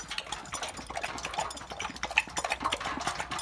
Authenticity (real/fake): real